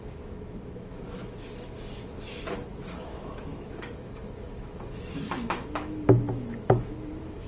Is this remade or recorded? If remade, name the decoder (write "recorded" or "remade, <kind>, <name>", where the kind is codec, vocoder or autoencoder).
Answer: remade, autoencoder, DAC-VAE